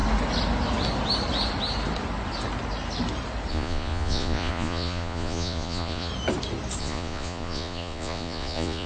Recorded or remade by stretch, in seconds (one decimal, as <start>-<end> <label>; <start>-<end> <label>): 0.0-3.5 recorded; 3.5-6.1 remade; 6.1-6.8 recorded; 6.8-8.9 remade